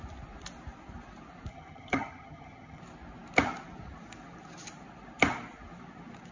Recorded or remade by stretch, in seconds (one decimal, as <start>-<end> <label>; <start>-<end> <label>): 0.0-1.5 recorded; 1.5-2.8 remade; 2.8-6.3 recorded